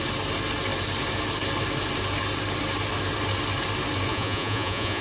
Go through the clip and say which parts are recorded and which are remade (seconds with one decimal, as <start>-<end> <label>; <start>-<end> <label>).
0.0-4.1 recorded; 4.1-5.0 remade